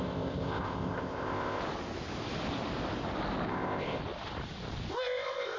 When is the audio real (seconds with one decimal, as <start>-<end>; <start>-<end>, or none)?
1.6-3.5; 4.0-4.9

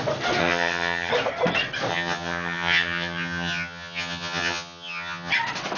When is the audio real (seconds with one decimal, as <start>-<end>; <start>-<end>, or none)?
0.0-0.4; 1.1-1.9; 5.3-5.8

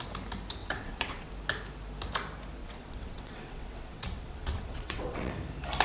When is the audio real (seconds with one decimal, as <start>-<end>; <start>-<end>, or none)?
0.0-0.6; 1.3-2.6; 5.3-5.8

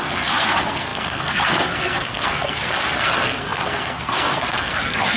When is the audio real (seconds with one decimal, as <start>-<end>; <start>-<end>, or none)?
none

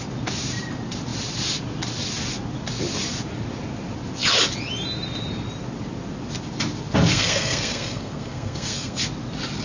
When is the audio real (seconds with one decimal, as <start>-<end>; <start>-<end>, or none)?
0.0-7.1; 9.0-9.6